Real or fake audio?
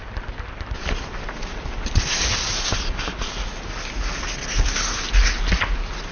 real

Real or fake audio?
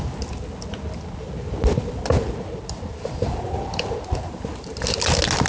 real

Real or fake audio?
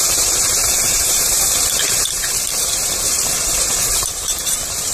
fake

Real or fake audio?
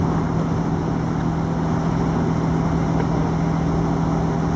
real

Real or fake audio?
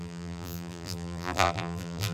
fake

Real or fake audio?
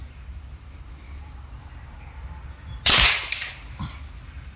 real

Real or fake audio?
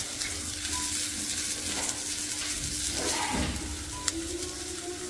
real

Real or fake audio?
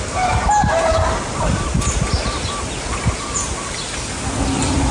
real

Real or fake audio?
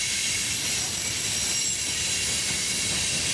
fake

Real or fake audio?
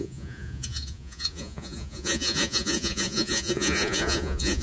fake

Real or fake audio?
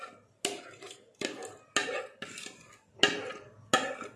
real